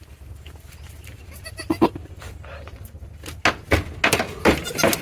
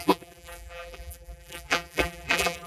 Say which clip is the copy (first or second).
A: second